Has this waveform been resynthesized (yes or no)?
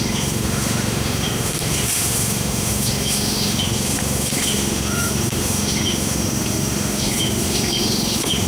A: yes